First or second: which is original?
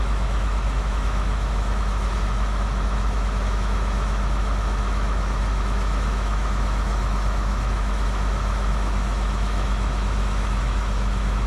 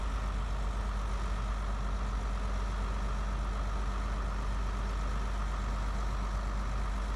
second